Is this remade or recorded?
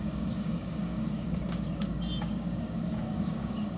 remade